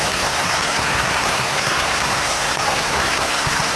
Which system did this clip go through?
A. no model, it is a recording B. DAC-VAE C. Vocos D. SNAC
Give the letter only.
D